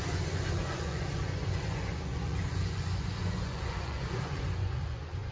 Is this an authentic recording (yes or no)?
no